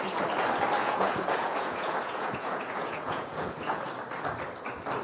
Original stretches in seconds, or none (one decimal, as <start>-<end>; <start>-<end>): 0.0-0.8; 3.8-5.0